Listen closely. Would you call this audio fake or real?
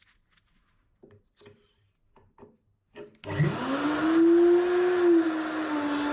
real